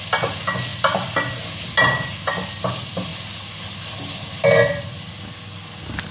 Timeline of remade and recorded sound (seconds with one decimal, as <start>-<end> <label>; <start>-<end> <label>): 0.0-0.7 recorded; 0.7-1.3 remade; 1.3-6.1 recorded